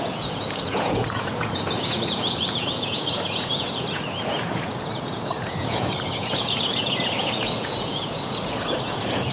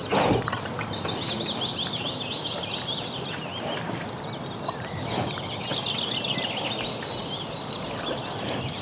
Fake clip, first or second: first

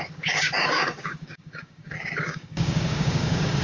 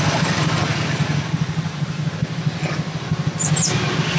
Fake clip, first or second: first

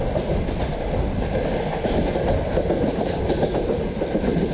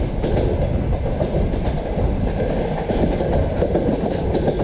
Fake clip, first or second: second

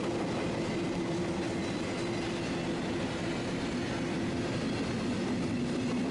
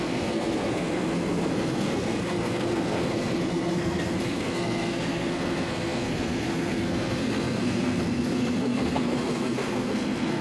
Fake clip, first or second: second